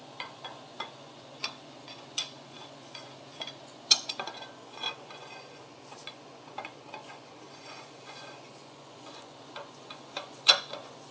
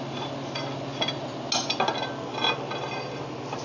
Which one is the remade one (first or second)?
first